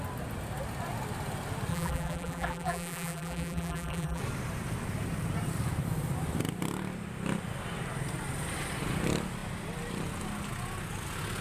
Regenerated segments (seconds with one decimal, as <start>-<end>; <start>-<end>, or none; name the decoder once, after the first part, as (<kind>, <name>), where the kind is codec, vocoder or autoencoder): 1.7-4.2 (vocoder, BigVGAN v2)